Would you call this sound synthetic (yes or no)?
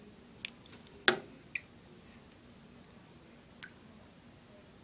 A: no